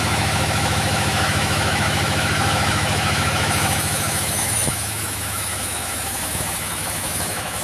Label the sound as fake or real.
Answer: fake